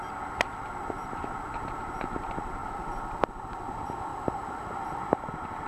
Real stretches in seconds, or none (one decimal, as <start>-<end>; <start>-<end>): 0.0-2.6; 3.3-4.1; 5.0-5.7